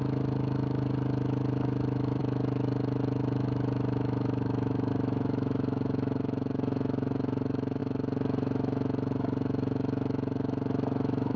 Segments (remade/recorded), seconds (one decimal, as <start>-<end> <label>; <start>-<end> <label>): 0.0-11.4 remade